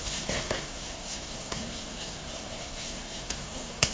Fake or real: fake